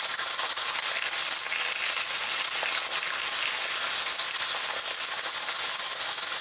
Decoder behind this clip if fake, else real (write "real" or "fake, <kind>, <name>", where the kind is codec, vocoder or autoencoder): real